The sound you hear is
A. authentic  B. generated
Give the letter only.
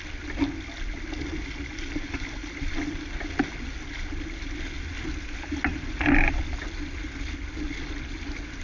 A